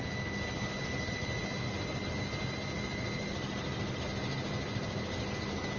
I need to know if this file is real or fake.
real